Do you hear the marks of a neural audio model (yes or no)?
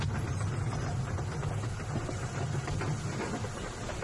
no